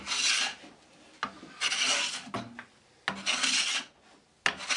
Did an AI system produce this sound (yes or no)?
no